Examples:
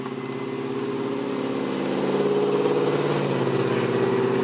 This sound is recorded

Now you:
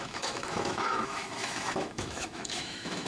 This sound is remade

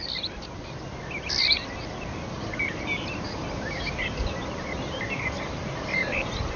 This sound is recorded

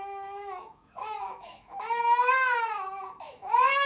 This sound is remade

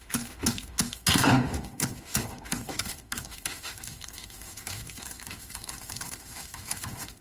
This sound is remade